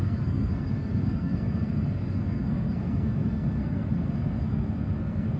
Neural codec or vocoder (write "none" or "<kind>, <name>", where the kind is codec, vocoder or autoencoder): codec, SNAC